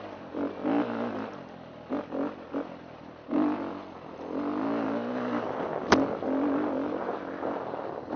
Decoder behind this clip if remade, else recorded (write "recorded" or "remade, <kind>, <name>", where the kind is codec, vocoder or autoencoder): recorded